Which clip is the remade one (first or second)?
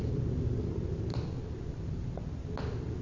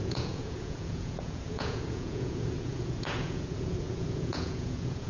second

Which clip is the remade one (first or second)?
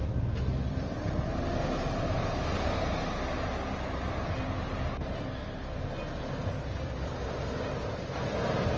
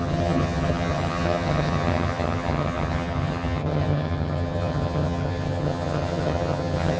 second